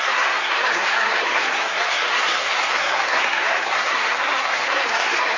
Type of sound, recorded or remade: remade